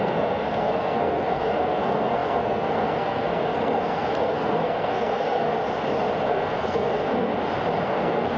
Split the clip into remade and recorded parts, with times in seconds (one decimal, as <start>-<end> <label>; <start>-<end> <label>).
0.0-5.6 remade; 5.6-6.3 recorded; 6.3-7.3 remade; 7.3-7.8 recorded; 7.8-8.4 remade